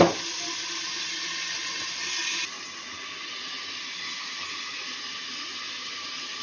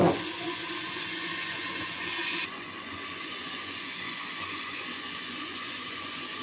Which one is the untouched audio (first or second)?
first